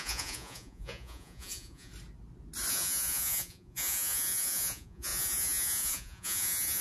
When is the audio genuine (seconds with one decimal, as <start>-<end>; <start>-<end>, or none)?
1.9-2.7